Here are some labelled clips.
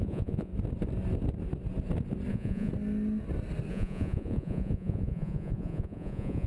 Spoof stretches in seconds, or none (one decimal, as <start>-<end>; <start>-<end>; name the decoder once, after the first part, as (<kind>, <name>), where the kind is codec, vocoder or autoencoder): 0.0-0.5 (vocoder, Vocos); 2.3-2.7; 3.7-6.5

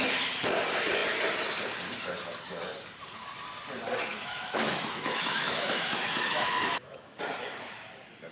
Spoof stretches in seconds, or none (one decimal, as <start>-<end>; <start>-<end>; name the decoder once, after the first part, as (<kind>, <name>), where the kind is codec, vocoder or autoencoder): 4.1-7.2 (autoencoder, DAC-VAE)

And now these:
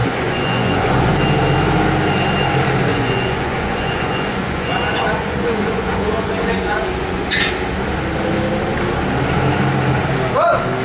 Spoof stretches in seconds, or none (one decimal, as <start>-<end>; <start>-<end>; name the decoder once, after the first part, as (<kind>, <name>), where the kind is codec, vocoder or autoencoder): 0.0-1.1 (vocoder, Vocos); 2.9-7.5